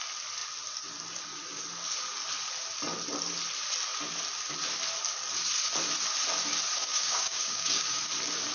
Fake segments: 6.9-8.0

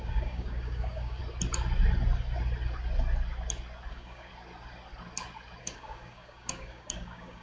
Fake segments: 0.0-1.2; 3.9-4.3; 5.6-7.4

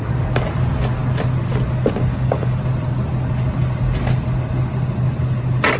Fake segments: 2.1-2.6

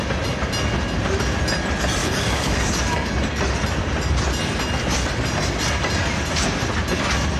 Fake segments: 2.0-3.1

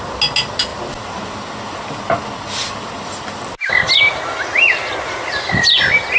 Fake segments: none

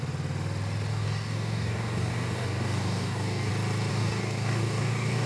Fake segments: 0.9-3.5; 3.9-5.3

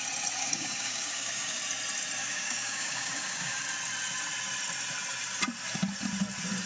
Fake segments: 0.4-1.6; 2.2-3.6

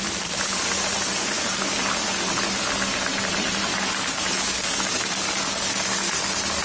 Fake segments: 3.7-6.6